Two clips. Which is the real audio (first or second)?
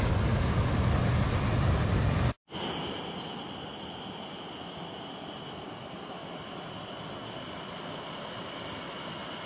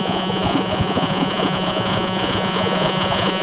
first